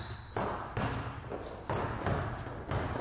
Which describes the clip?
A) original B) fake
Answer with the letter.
A